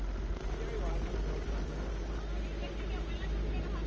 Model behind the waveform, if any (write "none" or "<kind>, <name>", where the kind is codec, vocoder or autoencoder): none